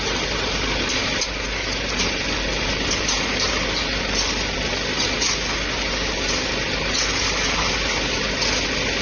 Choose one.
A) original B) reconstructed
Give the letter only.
A